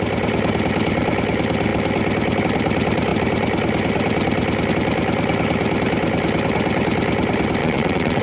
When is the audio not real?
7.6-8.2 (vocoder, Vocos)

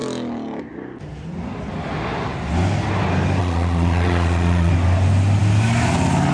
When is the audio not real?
3.4-4.7 (vocoder, Vocos)

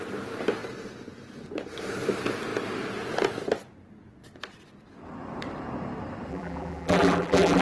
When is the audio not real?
6.3-7.6 (vocoder, BigVGAN v2)

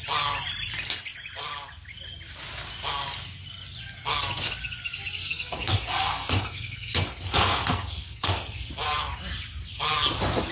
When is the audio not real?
5.2-8.7 (codec, SNAC)

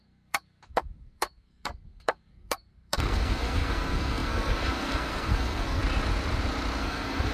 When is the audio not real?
0.0-5.8 (codec, SNAC); 6.8-7.3

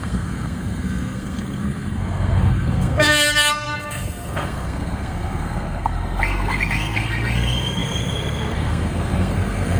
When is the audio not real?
0.0-9.8 (codec, SNAC)

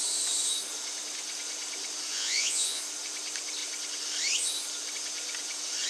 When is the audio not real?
2.1-2.8 (vocoder, Vocos)

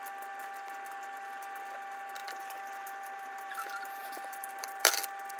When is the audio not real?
2.2-5.0 (vocoder, BigVGAN v2)